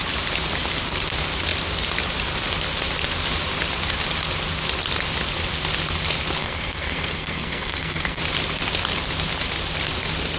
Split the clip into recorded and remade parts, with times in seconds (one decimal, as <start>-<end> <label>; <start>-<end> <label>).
0.0-6.4 recorded; 6.4-8.2 remade; 8.2-10.4 recorded